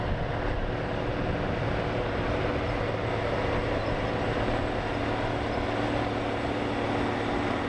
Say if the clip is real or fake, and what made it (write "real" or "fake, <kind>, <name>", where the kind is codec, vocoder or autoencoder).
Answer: real